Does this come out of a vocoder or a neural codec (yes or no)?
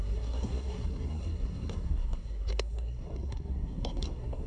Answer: yes